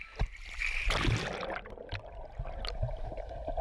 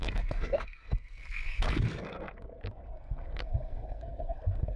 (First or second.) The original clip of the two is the first